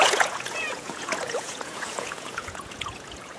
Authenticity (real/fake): fake